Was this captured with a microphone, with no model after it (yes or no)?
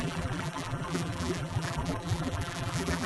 no